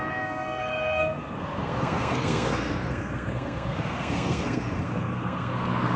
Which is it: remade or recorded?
remade